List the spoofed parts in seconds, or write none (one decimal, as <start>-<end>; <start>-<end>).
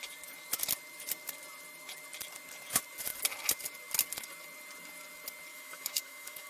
5.5-6.5